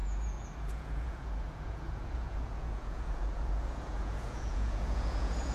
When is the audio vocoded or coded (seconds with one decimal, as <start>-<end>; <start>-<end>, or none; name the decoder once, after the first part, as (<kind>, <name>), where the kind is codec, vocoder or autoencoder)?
0.0-5.5 (vocoder, Vocos)

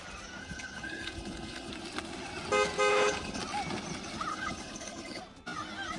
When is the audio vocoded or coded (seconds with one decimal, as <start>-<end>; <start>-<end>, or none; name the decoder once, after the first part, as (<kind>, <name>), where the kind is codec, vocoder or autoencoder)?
0.4-1.7 (codec, HILCodec); 2.9-3.4; 4.3-5.2